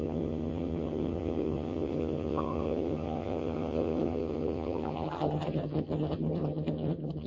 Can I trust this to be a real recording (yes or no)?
no